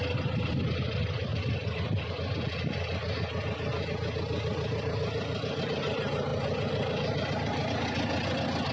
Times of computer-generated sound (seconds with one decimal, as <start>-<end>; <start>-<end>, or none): none